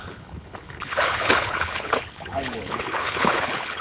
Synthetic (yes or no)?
yes